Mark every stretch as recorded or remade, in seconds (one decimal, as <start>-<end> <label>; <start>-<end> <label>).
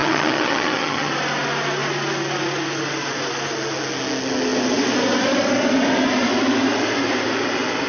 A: 0.0-1.1 remade; 1.1-7.9 recorded